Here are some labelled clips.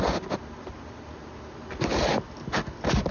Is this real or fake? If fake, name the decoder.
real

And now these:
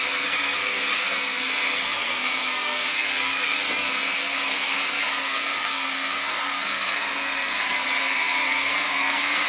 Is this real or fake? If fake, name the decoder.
fake, codec, SNAC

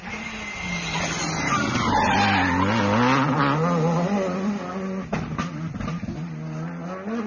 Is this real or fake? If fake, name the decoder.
real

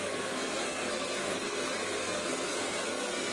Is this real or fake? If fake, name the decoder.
fake, codec, SNAC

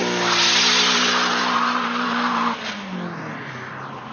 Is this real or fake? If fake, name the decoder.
real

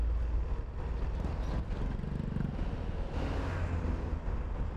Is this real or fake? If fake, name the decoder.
real